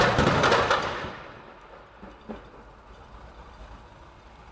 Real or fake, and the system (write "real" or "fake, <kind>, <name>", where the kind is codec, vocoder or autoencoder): real